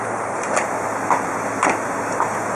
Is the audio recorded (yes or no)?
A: yes